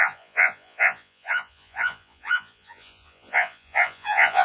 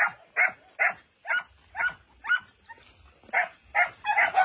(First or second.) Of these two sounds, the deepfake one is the first